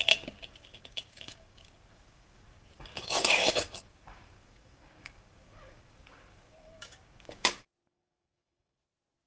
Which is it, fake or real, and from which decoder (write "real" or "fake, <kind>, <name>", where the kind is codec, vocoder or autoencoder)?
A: fake, codec, DAC